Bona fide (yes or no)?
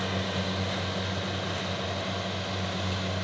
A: yes